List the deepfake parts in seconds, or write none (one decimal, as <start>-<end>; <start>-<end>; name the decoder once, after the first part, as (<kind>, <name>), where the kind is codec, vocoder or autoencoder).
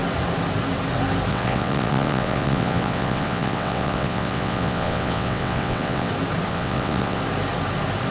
1.3-6.1 (vocoder, WaveNeXt); 6.5-7.2